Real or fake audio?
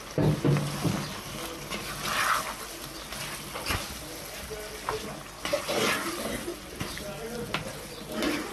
real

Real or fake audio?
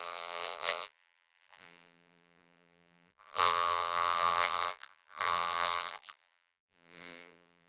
fake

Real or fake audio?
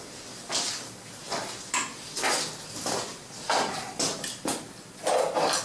real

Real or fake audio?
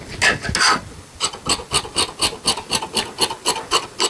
real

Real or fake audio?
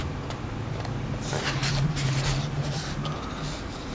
fake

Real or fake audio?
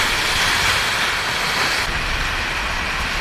real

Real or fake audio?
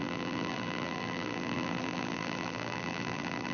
fake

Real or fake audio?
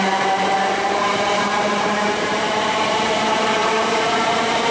fake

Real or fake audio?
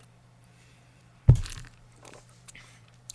fake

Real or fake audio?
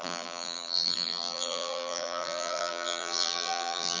fake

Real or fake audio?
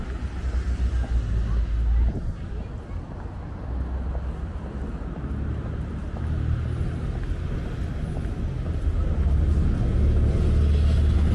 real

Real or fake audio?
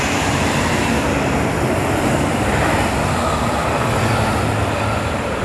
fake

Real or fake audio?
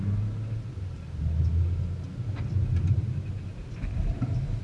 real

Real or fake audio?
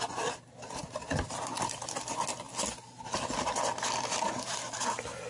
real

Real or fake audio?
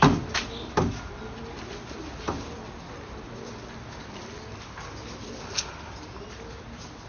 real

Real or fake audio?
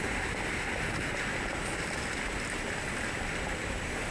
real